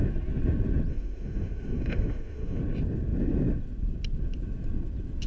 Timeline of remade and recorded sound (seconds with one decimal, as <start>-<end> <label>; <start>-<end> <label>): 0.0-0.9 recorded; 0.9-2.6 remade; 2.6-5.3 recorded